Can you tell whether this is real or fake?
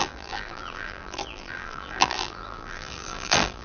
fake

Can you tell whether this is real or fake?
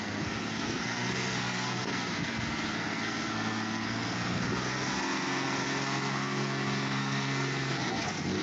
fake